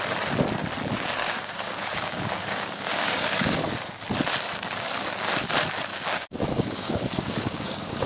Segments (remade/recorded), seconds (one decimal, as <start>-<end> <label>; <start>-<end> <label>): 0.0-1.2 recorded; 1.2-3.7 remade; 3.7-5.9 recorded; 5.9-8.1 remade